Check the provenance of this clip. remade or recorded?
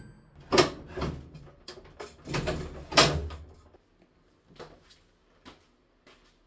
recorded